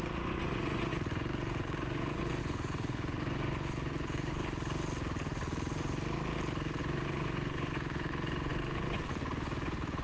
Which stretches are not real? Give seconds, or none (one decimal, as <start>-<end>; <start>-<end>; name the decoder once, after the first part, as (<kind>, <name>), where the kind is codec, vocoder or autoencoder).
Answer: 0.0-4.4 (vocoder, Vocos); 6.8-10.0